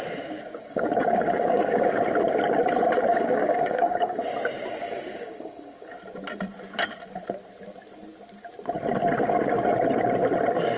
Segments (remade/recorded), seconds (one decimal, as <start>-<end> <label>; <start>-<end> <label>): 0.0-0.6 recorded; 0.6-2.0 remade; 2.0-3.1 recorded; 3.1-4.2 remade; 4.2-4.8 recorded; 4.8-5.9 remade; 5.9-10.8 recorded